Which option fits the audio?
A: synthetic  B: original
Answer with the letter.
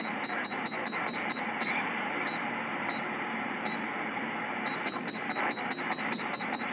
A